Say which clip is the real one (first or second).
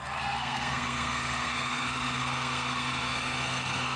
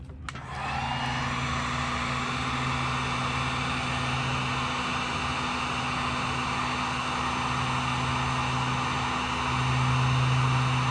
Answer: second